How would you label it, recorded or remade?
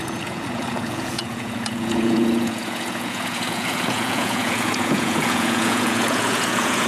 remade